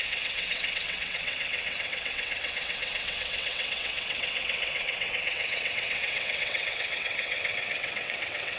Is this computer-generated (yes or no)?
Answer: yes